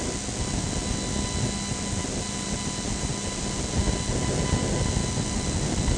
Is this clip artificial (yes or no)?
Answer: no